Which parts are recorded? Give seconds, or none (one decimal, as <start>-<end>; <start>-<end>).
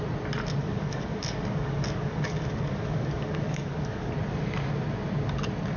0.0-0.6; 4.1-5.8